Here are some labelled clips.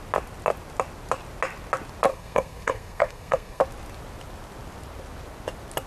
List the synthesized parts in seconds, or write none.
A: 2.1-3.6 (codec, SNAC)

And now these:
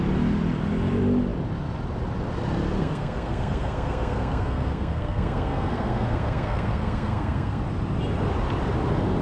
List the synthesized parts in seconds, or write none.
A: 2.8-7.6 (codec, SNAC)

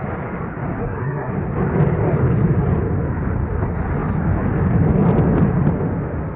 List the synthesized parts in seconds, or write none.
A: 0.8-1.3 (codec, SNAC)

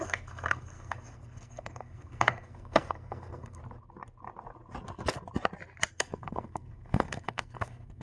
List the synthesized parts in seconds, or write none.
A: 0.0-3.6 (codec, SNAC); 5.9-8.0

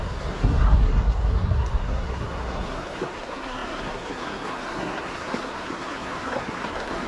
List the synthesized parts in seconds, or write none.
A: 0.0-7.1 (codec, SNAC)

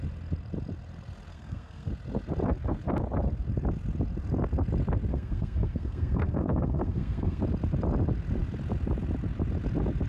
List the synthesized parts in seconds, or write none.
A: 1.3-1.9 (codec, SNAC); 5.1-7.4